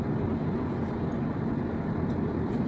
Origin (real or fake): real